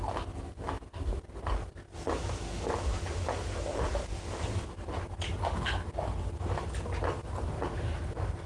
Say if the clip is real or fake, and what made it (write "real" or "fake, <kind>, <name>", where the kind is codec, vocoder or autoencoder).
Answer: real